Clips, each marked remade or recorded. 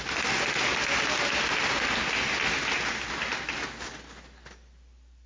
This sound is recorded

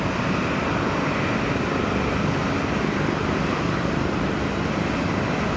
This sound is recorded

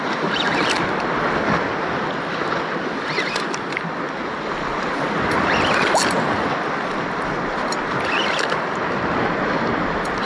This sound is recorded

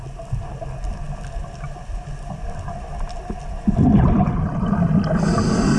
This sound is recorded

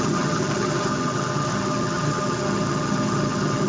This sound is remade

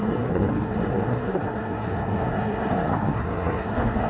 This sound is remade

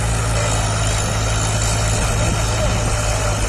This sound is recorded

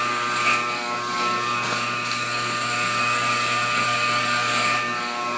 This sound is remade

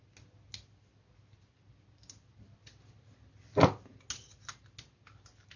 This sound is recorded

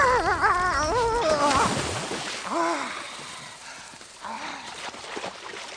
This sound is recorded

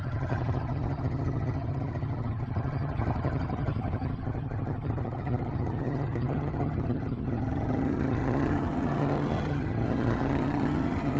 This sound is remade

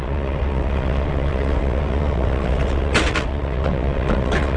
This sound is remade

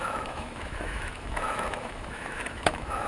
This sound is remade